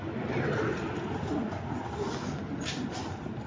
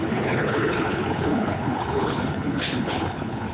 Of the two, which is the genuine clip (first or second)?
first